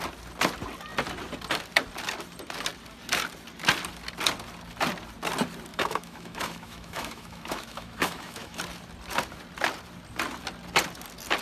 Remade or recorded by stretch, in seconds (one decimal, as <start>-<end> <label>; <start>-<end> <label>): 0.0-5.7 recorded; 5.7-8.6 remade; 8.6-11.4 recorded